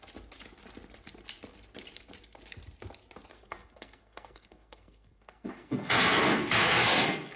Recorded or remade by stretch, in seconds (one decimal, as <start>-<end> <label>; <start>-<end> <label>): 0.0-3.3 recorded; 3.3-7.4 remade